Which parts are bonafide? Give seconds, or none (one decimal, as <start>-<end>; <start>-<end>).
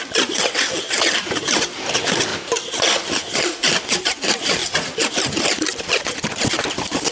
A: 0.0-7.1